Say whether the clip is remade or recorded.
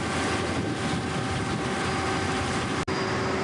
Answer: recorded